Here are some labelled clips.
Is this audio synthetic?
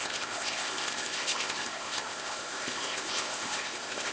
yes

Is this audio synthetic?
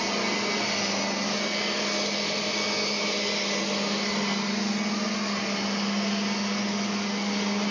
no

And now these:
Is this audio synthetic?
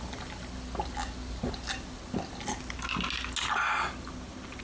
no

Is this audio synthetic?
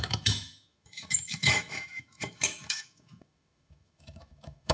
yes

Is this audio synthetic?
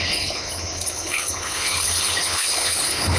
yes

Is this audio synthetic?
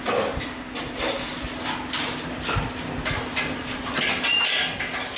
no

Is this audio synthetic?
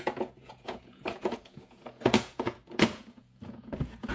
yes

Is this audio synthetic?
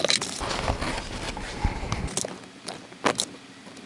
no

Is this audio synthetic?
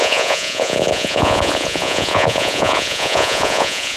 yes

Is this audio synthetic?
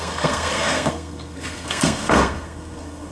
yes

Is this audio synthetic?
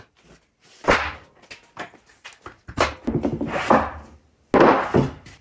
no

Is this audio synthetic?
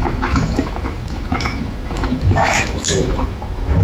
yes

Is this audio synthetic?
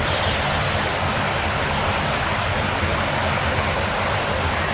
no